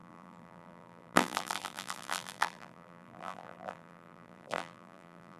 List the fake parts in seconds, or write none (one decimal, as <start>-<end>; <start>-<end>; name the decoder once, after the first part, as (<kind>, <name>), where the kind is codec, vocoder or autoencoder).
0.0-5.4 (vocoder, BigVGAN v2)